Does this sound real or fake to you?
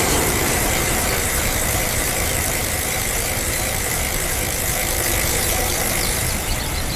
fake